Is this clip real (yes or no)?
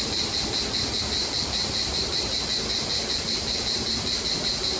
yes